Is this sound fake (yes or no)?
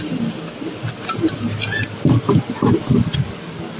no